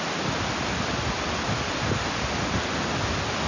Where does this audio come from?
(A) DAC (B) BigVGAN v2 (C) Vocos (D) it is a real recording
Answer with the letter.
D